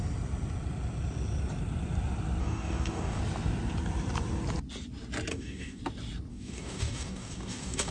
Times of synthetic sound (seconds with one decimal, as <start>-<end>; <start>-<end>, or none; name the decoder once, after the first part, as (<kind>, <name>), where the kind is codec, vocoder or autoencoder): 2.4-3.2 (codec, DAC); 5.3-5.8; 6.3-7.9

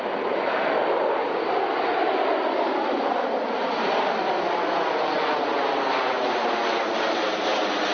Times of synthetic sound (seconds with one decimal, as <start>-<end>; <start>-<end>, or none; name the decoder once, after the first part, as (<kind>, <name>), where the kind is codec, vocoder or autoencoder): none

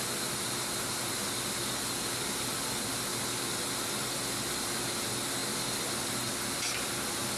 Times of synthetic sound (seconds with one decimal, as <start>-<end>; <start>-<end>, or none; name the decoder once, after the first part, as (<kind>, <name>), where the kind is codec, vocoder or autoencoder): none

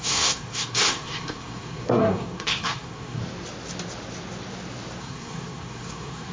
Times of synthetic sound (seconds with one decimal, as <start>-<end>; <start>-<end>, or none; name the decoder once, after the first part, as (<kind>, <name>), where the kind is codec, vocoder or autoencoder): 0.0-3.2 (codec, SNAC); 5.0-6.3

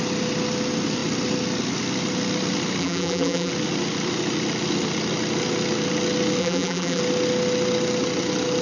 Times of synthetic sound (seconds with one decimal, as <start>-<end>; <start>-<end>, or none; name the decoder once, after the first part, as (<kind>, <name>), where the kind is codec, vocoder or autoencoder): 2.8-3.5 (vocoder, BigVGAN v2); 6.4-7.0

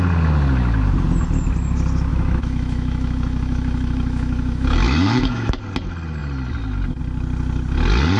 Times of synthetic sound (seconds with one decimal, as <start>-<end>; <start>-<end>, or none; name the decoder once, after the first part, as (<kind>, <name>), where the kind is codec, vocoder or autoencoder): 2.1-5.6 (autoencoder, DAC-VAE)

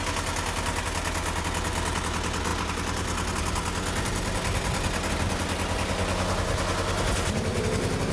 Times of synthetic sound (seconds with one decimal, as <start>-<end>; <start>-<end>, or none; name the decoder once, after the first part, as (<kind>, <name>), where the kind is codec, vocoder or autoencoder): none